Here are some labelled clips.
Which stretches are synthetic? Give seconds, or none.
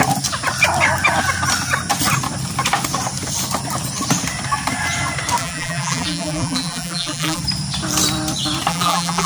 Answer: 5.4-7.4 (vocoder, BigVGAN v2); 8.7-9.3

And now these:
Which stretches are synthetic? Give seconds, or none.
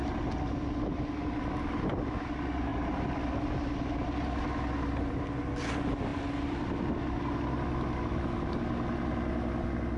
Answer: 2.7-3.2 (vocoder, BigVGAN v2)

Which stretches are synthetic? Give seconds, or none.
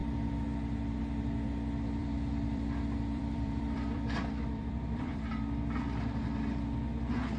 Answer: 2.0-5.3 (vocoder, BigVGAN v2)